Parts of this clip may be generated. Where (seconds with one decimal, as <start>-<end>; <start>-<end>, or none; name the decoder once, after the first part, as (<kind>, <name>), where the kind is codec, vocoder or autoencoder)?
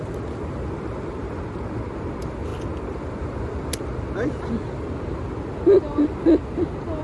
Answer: none